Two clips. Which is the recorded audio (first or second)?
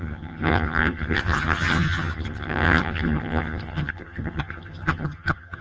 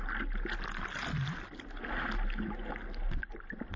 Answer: second